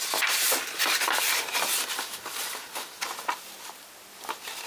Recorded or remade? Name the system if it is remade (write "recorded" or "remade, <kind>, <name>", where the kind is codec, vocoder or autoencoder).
recorded